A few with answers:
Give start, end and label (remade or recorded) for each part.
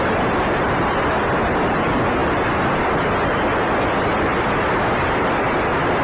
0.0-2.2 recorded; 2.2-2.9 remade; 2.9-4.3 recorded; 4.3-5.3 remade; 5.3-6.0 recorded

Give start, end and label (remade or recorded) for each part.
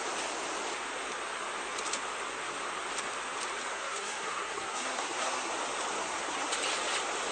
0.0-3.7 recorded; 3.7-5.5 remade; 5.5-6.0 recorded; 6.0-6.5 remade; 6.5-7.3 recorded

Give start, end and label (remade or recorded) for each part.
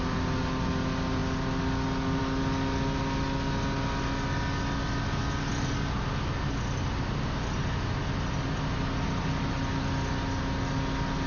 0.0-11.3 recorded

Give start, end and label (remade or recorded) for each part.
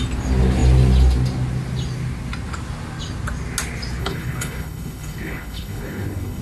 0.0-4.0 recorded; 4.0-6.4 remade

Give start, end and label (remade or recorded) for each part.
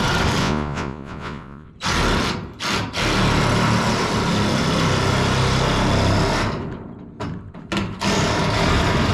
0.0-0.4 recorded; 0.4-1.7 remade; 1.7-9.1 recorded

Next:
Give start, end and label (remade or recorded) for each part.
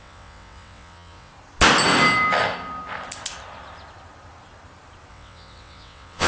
0.0-1.3 remade; 1.3-5.1 recorded; 5.1-6.3 remade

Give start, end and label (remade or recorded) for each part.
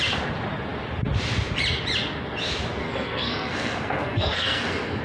0.0-2.8 recorded; 2.8-5.0 remade